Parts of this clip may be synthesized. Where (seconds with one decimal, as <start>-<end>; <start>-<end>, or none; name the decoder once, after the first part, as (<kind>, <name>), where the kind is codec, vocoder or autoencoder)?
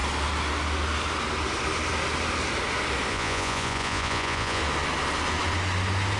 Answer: 3.1-4.6 (vocoder, Vocos)